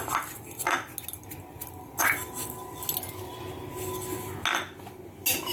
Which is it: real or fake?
real